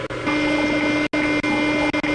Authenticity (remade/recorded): recorded